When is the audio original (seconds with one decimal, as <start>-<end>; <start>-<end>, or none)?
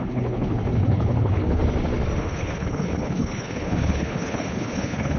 1.6-2.2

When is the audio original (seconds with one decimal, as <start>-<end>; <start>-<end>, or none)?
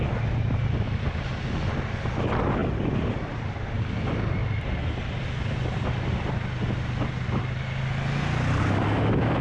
0.0-9.4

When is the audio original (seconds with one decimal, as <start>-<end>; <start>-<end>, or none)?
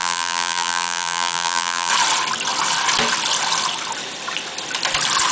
1.9-5.3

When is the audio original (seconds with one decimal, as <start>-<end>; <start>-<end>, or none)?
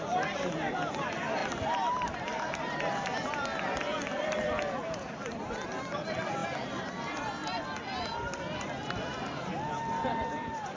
6.4-7.0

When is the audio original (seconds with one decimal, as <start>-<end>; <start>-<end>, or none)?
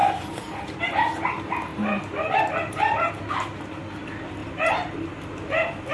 0.8-1.7; 3.1-4.4; 5.3-5.9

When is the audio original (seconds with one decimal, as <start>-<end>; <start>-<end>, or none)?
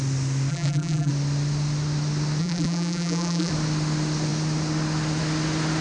0.0-0.5; 1.1-2.4; 3.5-5.8